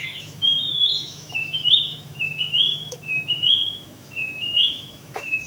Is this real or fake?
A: fake